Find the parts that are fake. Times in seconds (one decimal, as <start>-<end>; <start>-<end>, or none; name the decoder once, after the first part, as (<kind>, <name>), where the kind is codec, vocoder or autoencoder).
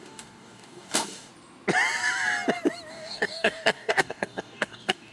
0.0-1.3 (codec, DAC); 2.9-5.1